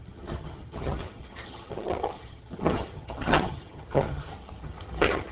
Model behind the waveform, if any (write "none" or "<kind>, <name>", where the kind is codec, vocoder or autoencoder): vocoder, HiFi-GAN